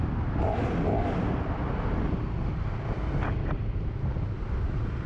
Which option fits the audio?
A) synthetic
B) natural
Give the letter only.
B